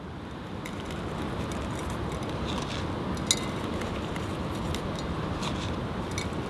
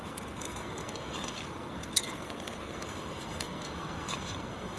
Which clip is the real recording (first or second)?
first